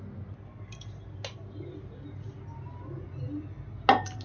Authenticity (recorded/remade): recorded